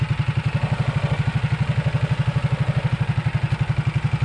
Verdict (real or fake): real